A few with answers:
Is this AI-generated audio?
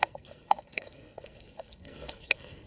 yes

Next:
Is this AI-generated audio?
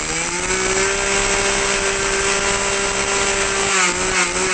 no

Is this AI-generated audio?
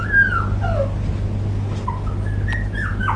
no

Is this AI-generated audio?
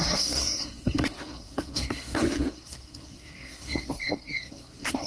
yes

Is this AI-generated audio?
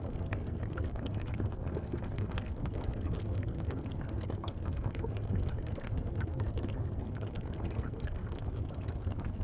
yes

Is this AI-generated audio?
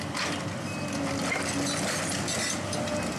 no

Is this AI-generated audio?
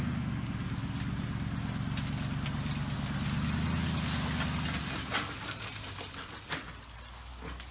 no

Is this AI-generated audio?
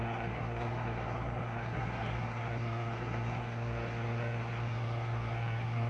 yes